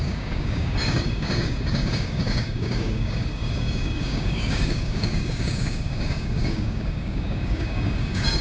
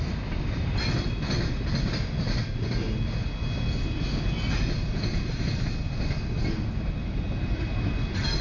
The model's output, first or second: first